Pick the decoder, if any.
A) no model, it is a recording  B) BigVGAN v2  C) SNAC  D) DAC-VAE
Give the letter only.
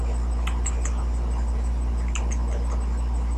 A